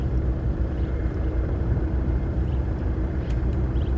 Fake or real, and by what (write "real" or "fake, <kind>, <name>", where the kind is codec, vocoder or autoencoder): fake, vocoder, BigVGAN v2